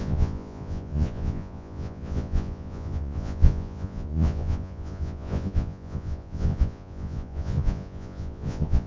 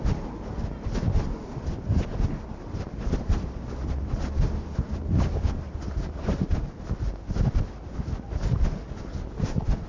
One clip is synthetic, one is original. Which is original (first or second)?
second